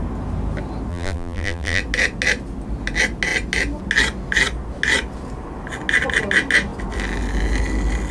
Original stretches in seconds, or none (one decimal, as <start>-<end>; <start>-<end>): 0.0-0.9; 1.8-8.1